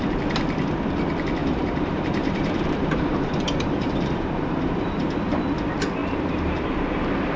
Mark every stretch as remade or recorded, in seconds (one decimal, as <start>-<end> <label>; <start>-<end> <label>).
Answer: 0.0-1.4 recorded; 1.4-5.4 remade; 5.4-6.0 recorded; 6.0-6.6 remade; 6.6-7.4 recorded